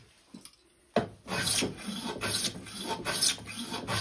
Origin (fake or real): real